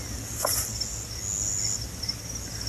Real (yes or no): yes